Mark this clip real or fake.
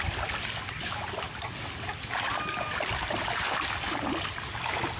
real